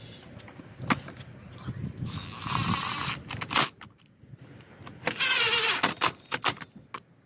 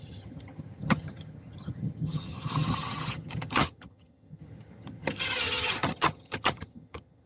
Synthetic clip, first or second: second